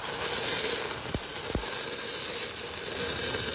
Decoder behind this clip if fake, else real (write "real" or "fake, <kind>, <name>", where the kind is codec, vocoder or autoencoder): real